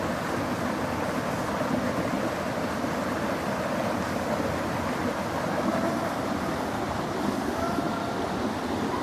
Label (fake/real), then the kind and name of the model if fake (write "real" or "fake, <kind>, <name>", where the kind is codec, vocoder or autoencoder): real